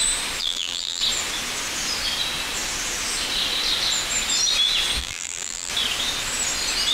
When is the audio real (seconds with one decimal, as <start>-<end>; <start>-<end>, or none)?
0.0-0.4; 1.0-5.0; 5.7-6.9